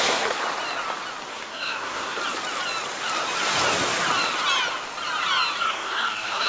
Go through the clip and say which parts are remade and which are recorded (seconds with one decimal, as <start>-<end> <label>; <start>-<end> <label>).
0.0-0.4 remade; 0.4-1.3 recorded; 1.3-2.2 remade; 2.2-5.6 recorded; 5.6-6.5 remade